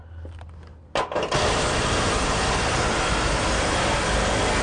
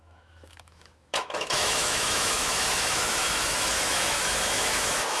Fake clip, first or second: second